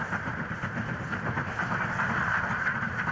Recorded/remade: recorded